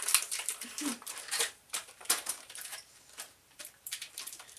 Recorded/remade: remade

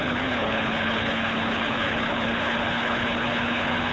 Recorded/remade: remade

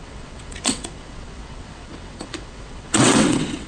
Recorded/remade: remade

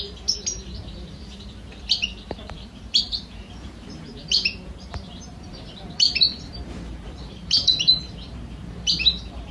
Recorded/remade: remade